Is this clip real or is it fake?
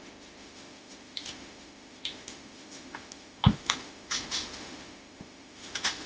fake